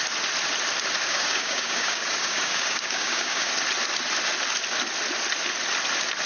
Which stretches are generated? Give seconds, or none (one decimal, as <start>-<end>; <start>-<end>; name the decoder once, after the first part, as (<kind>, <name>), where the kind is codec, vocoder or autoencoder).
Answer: 1.1-3.5 (codec, DAC)